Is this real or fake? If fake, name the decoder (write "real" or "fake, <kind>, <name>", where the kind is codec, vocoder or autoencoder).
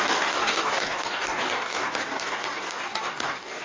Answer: fake, codec, DAC